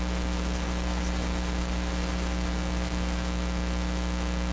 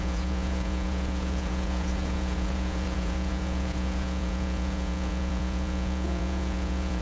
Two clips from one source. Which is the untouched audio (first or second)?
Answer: first